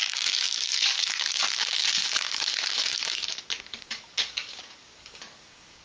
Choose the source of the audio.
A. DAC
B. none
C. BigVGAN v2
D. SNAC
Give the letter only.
A